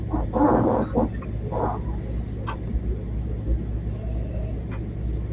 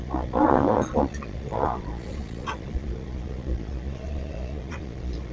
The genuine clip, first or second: first